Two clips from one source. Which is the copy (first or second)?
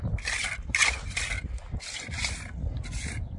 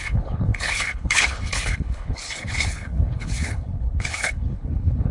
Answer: second